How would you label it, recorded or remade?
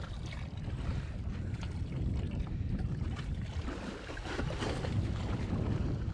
remade